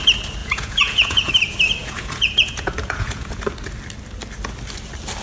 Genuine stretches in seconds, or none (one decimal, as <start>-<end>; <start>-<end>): 0.0-0.4; 1.3-1.8; 3.4-5.2